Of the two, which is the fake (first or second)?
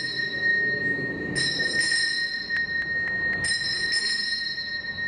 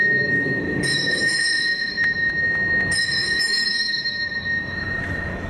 second